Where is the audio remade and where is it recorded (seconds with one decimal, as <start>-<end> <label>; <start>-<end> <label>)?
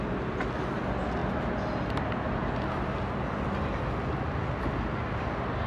0.0-5.7 recorded